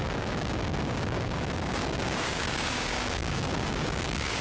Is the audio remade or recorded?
remade